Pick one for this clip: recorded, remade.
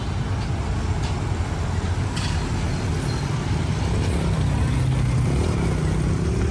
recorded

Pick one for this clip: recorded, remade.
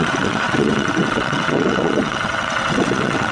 remade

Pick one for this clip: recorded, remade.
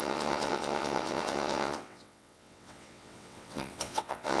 remade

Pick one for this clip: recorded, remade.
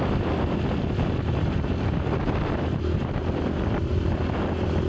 recorded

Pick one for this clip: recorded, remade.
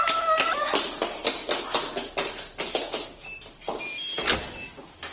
recorded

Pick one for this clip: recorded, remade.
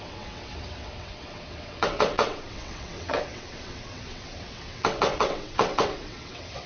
remade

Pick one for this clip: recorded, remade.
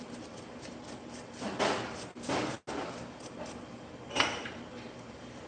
recorded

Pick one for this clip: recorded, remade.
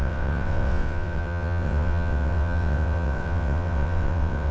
remade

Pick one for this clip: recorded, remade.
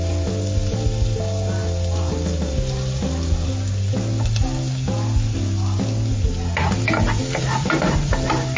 recorded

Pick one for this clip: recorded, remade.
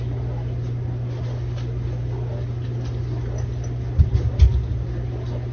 recorded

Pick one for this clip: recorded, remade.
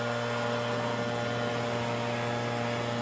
recorded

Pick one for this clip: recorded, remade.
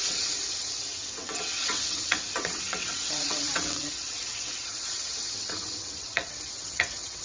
remade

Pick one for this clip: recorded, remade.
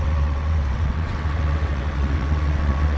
remade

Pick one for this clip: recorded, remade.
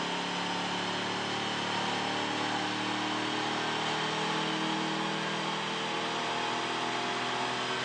recorded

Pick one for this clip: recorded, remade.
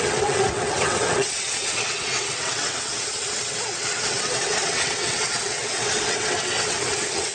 remade